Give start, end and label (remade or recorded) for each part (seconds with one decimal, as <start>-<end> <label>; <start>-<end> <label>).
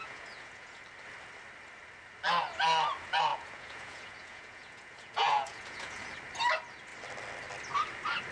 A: 0.0-0.8 remade; 0.8-3.3 recorded; 3.3-6.1 remade; 6.1-8.3 recorded